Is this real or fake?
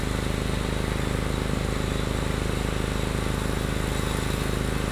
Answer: real